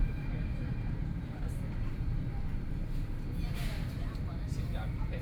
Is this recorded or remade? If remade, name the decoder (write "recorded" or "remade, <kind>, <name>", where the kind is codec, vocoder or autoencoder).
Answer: remade, vocoder, BigVGAN v2